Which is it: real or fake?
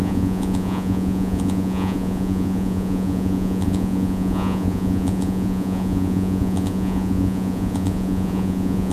fake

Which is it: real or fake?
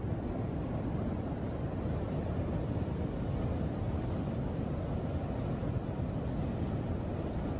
real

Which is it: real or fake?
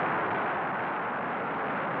real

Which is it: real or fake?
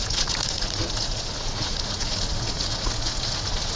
fake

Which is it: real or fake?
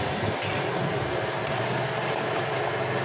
real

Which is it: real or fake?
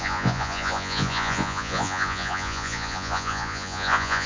fake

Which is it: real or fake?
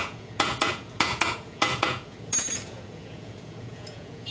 fake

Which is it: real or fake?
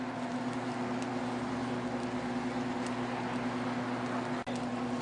real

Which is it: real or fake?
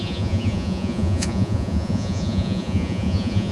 fake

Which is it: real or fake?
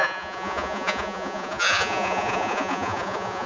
fake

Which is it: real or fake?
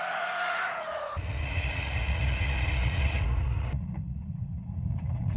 fake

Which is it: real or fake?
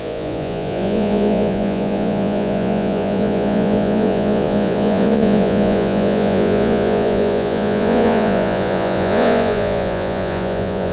fake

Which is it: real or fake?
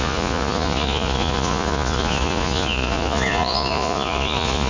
fake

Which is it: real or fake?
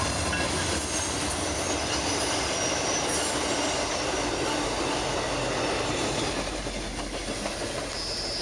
real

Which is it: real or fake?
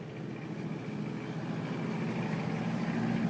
real